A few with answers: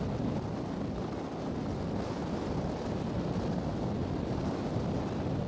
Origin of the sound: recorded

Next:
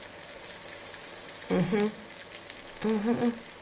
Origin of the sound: recorded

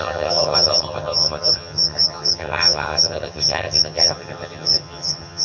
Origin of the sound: remade